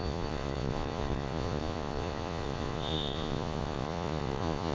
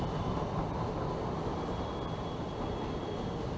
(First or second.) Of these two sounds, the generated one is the first